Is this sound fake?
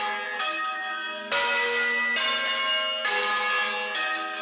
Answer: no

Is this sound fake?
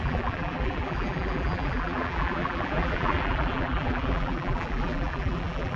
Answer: yes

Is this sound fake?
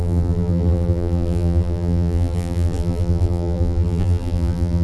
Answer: yes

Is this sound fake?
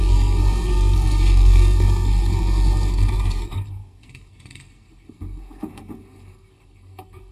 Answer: yes